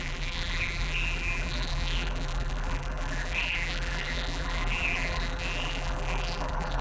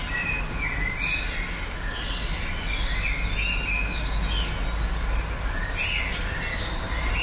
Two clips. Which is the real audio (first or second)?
second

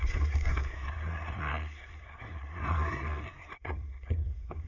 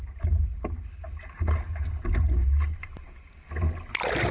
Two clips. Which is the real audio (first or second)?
second